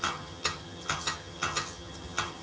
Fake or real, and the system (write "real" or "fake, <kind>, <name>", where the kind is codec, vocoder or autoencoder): fake, vocoder, HiFi-GAN